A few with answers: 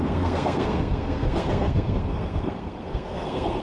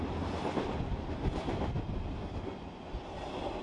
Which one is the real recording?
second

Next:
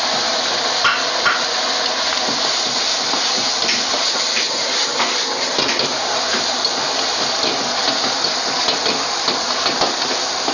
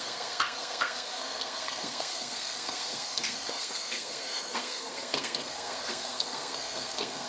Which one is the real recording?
first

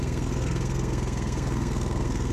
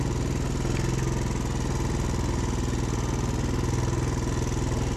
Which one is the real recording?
second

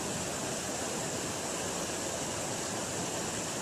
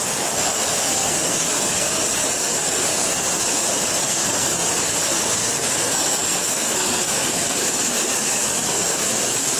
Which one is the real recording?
first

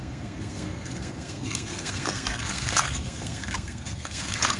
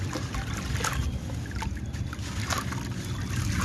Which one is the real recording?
second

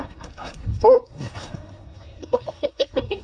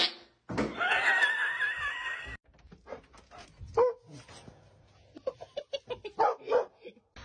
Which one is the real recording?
second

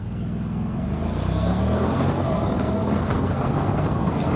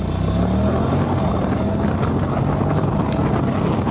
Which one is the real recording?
second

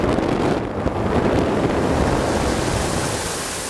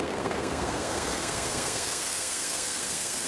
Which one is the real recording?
first